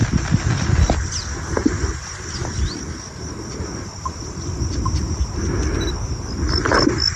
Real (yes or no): yes